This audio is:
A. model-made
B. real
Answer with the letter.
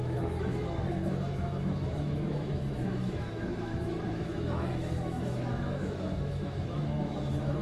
A